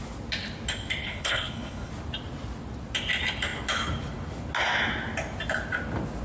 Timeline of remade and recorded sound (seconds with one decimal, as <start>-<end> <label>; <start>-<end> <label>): 0.0-1.0 recorded; 1.0-1.9 remade; 1.9-6.2 recorded